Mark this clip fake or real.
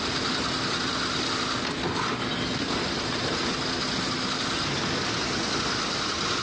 real